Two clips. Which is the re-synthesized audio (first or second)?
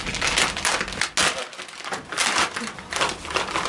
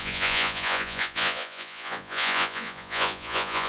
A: second